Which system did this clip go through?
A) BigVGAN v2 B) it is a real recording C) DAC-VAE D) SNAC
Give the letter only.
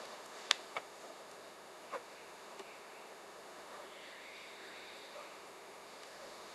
C